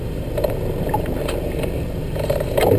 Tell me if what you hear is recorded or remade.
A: remade